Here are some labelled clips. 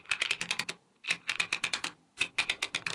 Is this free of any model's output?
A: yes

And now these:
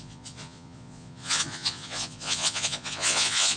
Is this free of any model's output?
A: no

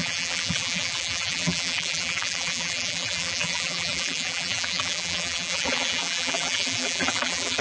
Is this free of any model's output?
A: no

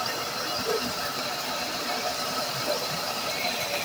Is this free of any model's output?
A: no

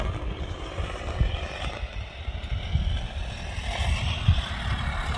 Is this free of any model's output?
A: yes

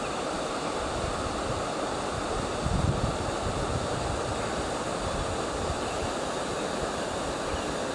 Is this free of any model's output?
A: yes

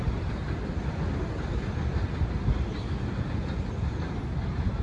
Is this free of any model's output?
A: yes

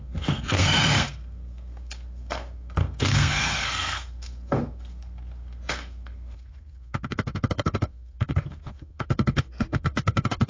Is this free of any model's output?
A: no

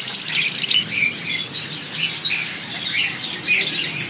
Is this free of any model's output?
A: yes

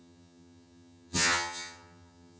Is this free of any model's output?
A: no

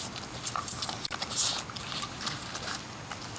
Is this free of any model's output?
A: yes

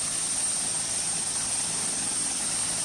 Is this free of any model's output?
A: yes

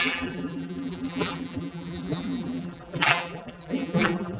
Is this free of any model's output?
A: no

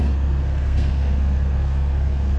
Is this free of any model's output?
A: no